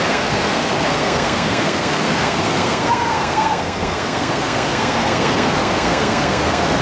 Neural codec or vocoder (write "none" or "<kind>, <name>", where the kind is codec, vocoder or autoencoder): codec, SNAC